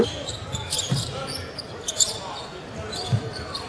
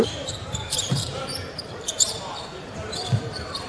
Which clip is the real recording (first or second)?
first